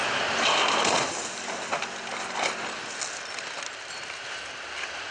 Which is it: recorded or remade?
recorded